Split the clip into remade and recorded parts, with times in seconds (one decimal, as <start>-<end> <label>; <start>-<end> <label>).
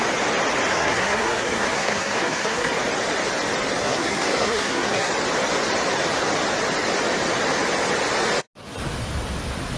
0.0-0.7 recorded; 0.7-2.7 remade; 2.7-3.8 recorded; 3.8-5.1 remade; 5.1-9.8 recorded